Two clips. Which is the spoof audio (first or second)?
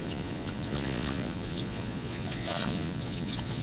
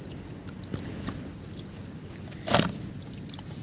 first